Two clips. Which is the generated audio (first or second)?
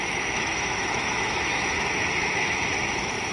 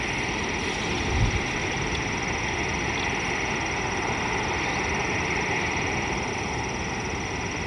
first